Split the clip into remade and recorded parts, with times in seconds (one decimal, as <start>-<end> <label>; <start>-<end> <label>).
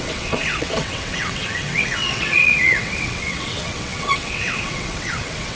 0.0-5.6 remade